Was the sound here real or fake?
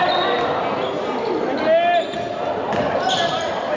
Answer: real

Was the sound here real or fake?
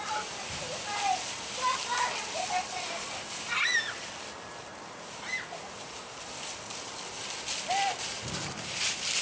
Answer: real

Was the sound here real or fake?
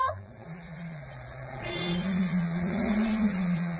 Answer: fake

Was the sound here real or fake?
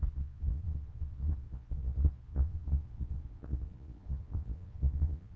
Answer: fake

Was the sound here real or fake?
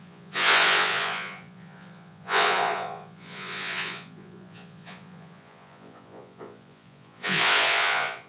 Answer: fake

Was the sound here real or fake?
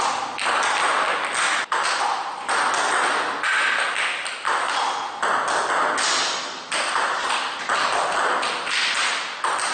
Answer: real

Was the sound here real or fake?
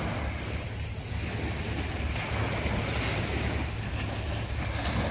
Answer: real